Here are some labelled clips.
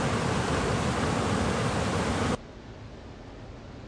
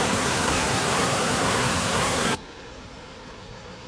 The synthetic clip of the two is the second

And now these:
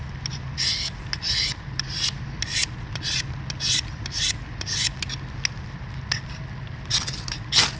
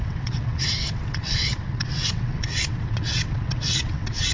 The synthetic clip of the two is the second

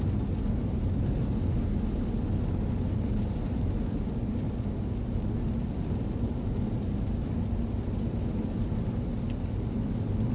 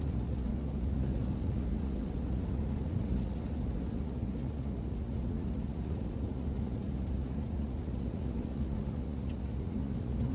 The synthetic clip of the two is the second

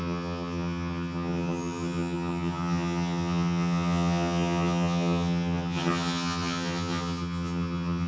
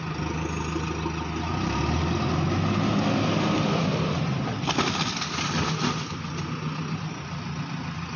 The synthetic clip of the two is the first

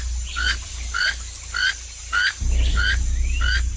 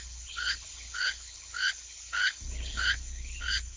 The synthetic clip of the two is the second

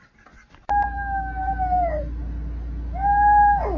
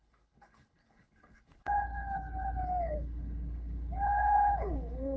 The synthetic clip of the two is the second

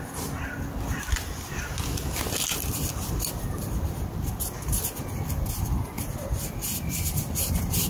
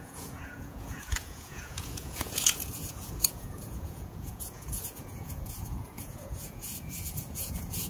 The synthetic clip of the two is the second